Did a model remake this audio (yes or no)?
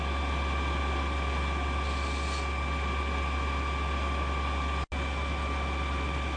no